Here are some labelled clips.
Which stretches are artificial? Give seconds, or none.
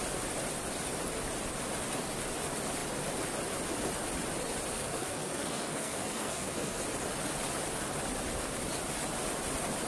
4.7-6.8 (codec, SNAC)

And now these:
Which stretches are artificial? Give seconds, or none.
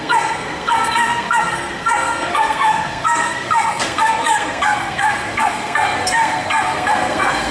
0.0-7.5 (codec, SNAC)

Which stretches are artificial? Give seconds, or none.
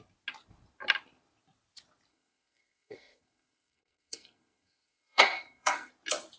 2.1-5.9 (codec, SNAC)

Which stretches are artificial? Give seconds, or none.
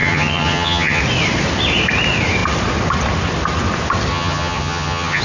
0.0-1.0 (vocoder, HiFi-GAN); 4.1-5.2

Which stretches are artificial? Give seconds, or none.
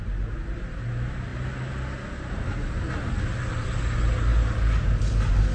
none